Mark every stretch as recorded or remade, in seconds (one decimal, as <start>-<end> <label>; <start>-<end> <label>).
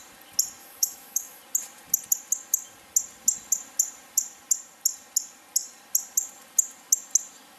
0.0-0.6 recorded; 0.6-1.4 remade; 1.4-7.6 recorded